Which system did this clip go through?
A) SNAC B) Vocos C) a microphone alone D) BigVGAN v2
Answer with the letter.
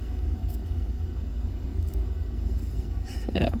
A